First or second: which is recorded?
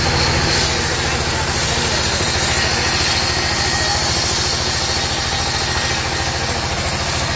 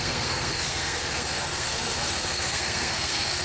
first